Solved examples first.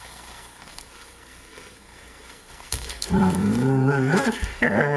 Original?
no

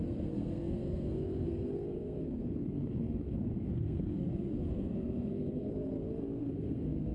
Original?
no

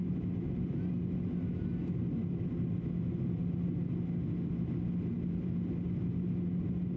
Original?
yes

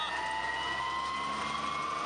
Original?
yes